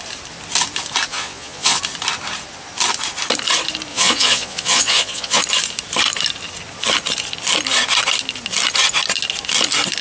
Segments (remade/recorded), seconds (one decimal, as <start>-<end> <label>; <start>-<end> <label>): 0.0-1.1 recorded; 1.1-1.8 remade; 1.8-3.9 recorded; 3.9-5.4 remade; 5.4-10.0 recorded